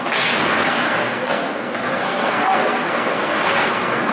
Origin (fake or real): fake